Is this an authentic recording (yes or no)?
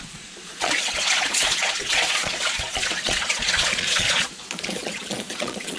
no